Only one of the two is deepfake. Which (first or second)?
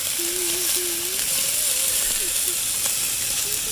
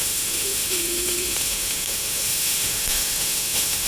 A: second